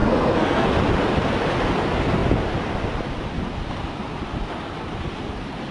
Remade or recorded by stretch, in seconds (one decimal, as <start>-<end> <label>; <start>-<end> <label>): 0.0-0.7 remade; 0.7-5.7 recorded